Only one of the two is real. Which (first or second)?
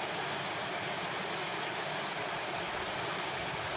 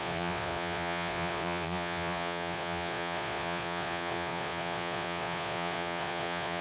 first